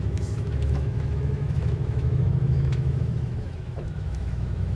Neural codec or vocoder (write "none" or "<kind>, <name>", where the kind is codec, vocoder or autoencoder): autoencoder, DAC-VAE